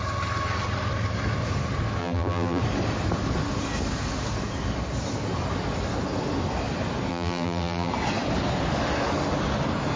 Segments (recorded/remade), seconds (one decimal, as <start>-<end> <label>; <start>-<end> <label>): 0.0-2.0 recorded; 2.0-2.6 remade; 2.6-7.1 recorded; 7.1-7.9 remade; 7.9-10.0 recorded